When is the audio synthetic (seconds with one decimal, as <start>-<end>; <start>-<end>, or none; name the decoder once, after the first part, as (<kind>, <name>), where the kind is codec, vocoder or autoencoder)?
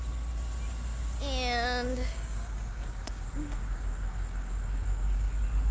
1.9-5.3 (codec, DAC)